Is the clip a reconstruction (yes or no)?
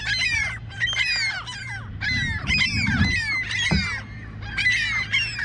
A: yes